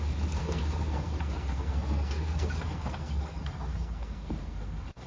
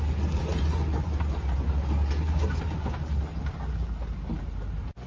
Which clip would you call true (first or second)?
second